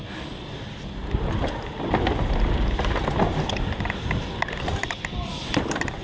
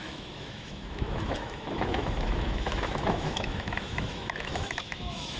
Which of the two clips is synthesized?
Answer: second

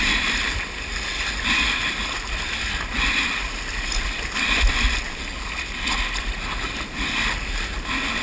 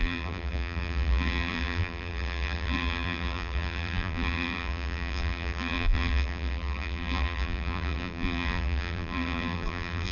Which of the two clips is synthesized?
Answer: second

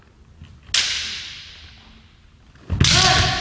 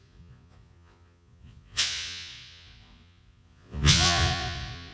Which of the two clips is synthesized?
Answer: second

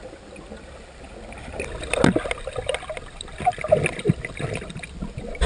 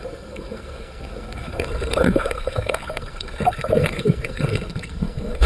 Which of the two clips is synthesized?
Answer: second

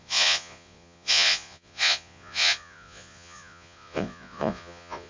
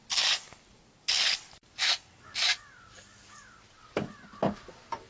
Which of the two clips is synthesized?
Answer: first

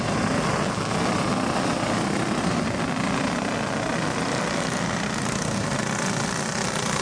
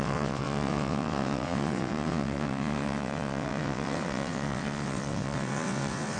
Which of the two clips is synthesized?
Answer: second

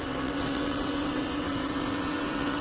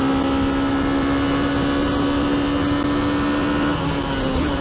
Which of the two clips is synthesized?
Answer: first